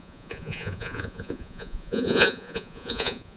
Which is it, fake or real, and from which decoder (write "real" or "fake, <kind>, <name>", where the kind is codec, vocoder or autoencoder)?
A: fake, vocoder, Vocos